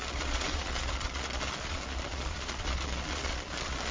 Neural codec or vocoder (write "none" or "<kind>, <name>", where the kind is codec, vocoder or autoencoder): vocoder, Vocos